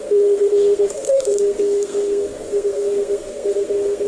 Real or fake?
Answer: fake